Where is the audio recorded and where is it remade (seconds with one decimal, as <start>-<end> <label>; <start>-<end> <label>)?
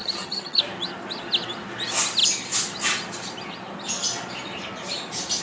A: 0.0-0.6 remade; 0.6-5.4 recorded